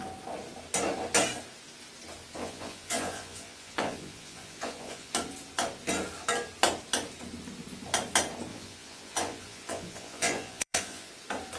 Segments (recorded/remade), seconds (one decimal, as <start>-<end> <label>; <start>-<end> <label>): 0.0-2.4 recorded; 2.4-5.1 remade; 5.1-8.5 recorded; 8.5-11.1 remade; 11.1-11.6 recorded